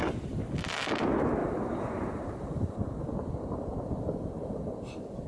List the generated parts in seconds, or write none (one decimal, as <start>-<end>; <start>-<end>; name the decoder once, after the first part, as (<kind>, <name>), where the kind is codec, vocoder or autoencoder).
1.4-2.7 (vocoder, BigVGAN v2)